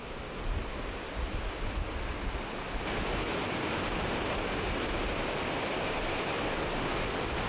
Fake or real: real